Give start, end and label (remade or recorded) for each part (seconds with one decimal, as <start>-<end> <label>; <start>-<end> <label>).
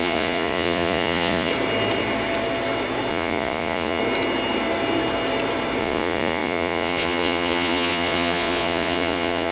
0.0-1.5 remade; 1.5-3.1 recorded; 3.1-4.0 remade; 4.0-5.8 recorded; 5.8-9.5 remade